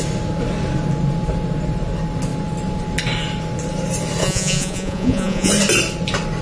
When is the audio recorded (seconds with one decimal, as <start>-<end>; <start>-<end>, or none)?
0.0-4.2; 5.5-6.4